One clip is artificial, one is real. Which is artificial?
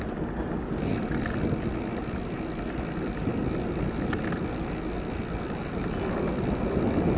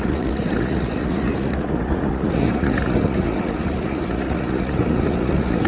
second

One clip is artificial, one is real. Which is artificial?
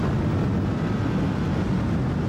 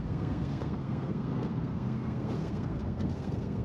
second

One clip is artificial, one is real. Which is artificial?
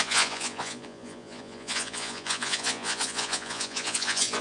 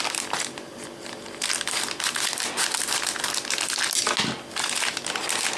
first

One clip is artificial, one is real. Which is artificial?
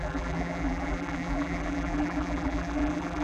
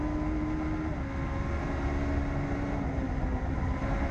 first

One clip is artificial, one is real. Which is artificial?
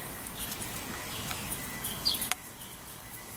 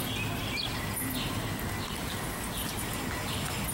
first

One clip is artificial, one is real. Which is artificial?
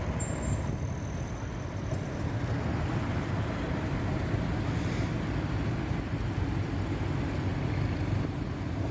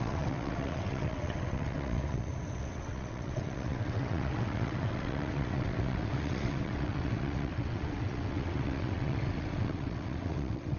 second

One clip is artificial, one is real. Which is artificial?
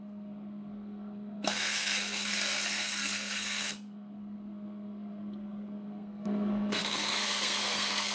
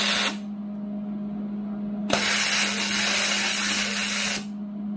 first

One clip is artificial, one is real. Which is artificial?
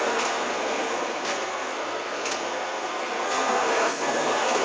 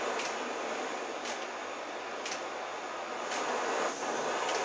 first